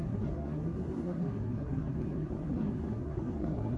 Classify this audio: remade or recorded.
remade